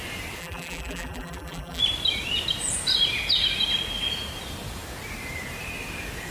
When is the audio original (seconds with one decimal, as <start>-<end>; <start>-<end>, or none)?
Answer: 0.0-0.4; 1.8-6.3